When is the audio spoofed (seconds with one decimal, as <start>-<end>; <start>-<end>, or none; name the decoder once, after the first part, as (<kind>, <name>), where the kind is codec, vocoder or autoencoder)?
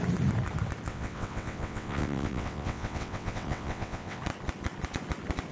0.9-4.2 (vocoder, WaveNeXt)